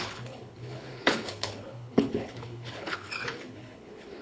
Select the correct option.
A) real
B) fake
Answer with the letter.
B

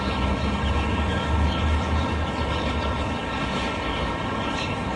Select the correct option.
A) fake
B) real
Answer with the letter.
A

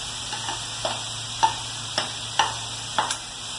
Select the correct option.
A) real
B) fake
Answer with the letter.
A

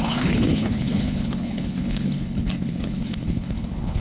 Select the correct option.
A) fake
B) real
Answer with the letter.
A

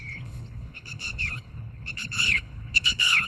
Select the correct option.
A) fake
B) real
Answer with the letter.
A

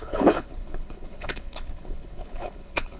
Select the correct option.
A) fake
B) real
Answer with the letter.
A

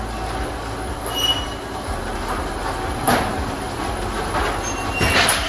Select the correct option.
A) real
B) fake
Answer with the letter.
A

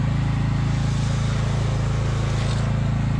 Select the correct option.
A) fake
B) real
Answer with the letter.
B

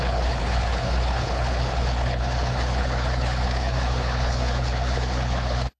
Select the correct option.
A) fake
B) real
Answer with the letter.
A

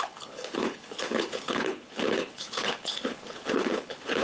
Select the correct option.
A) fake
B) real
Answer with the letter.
A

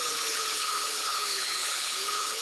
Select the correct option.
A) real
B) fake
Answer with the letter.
B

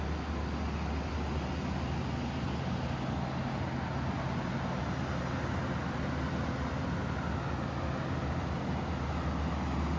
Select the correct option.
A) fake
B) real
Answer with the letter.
B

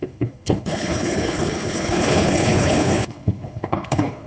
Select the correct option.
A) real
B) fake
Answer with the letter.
B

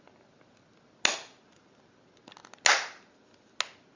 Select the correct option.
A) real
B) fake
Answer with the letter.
A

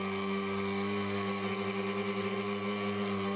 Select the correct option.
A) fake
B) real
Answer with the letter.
B